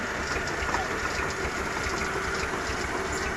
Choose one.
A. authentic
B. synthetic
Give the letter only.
A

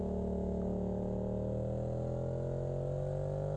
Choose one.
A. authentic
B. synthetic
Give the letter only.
A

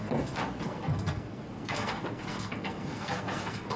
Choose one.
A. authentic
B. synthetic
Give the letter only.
B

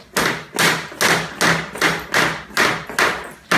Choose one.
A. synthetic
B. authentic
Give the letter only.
B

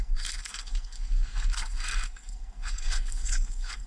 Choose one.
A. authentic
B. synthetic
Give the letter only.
B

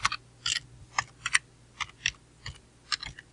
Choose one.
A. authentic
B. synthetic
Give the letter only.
A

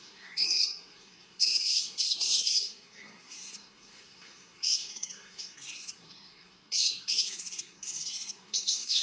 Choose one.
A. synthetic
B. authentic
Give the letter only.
A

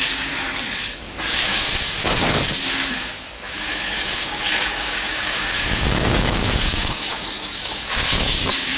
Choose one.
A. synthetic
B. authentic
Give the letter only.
A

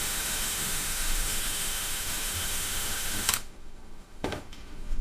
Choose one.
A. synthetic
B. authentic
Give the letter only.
A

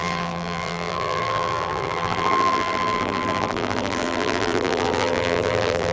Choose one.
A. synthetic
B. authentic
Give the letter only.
A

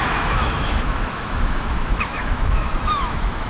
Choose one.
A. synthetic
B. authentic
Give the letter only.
A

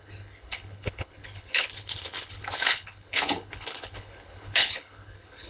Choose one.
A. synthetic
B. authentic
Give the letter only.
A